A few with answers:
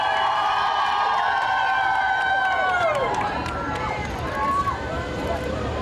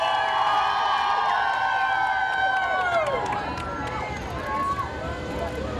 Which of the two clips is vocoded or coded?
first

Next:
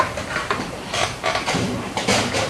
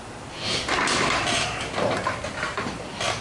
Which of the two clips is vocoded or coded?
first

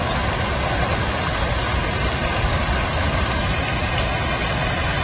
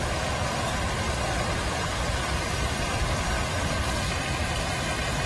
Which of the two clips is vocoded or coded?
second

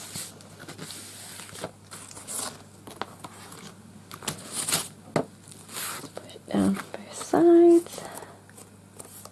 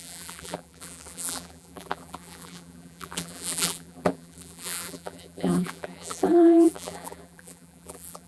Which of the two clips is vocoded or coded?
second